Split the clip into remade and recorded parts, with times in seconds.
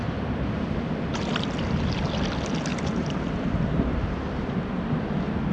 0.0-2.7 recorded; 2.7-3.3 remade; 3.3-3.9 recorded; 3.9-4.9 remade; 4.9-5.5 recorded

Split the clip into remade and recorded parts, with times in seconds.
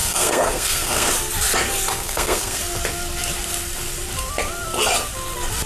0.0-1.1 remade; 1.1-1.9 recorded; 1.9-2.6 remade; 2.6-5.7 recorded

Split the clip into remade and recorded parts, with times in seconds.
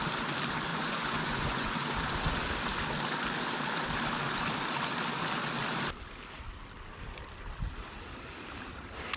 0.0-0.7 recorded; 0.7-1.7 remade; 1.7-9.2 recorded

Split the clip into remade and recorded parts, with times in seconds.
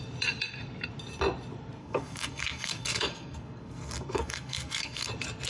0.0-1.8 recorded; 1.8-5.1 remade; 5.1-5.5 recorded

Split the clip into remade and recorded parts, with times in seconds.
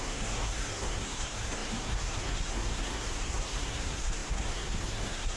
0.0-5.4 remade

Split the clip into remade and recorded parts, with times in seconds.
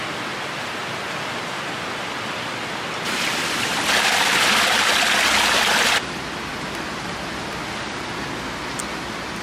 0.0-9.4 recorded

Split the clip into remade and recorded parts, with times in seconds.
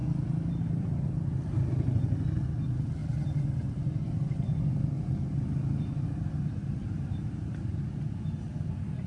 0.0-6.8 recorded; 6.8-7.9 remade; 7.9-9.1 recorded